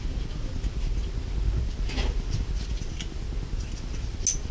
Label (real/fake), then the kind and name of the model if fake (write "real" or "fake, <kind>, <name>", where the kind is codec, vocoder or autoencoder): real